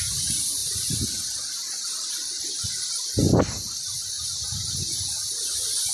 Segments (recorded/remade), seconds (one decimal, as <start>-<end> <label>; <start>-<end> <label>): 0.0-5.9 recorded